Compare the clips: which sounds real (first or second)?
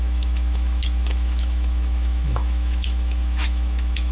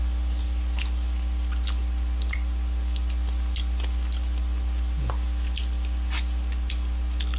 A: second